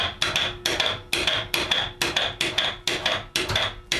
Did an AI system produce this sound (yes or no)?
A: no